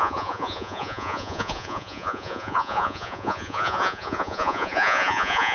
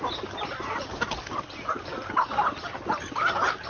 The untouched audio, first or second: second